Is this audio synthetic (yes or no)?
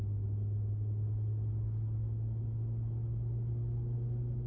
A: no